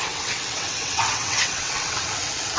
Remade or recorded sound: remade